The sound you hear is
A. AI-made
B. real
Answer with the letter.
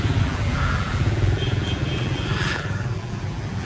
A